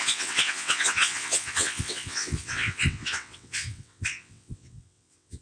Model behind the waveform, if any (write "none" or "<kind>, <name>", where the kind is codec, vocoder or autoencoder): vocoder, WaveNeXt